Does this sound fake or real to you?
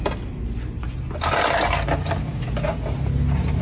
real